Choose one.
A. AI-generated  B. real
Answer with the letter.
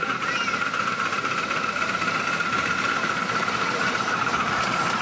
A